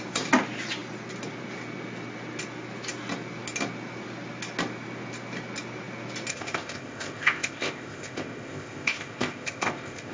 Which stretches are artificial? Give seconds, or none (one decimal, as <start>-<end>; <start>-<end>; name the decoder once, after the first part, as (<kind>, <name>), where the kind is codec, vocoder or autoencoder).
6.3-10.1 (codec, ZipCodec)